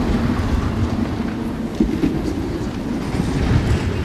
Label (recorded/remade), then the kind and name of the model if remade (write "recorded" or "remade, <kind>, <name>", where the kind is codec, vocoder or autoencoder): recorded